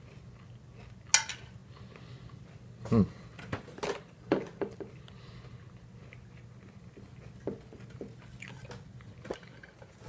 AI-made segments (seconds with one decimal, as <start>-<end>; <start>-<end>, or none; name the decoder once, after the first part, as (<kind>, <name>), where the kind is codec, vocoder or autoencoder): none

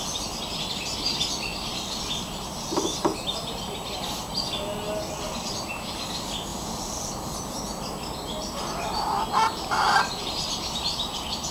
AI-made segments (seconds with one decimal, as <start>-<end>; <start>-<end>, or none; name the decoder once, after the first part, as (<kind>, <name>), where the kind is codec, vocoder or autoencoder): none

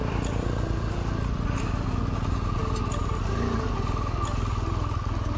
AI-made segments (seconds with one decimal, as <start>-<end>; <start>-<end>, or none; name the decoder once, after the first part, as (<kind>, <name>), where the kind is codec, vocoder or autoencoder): none